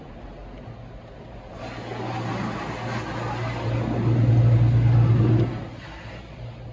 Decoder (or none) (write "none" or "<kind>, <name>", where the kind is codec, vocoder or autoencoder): none